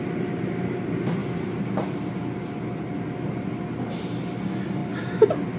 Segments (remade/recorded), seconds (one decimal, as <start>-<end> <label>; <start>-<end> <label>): 0.0-5.6 recorded